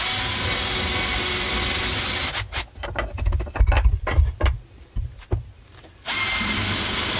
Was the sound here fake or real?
real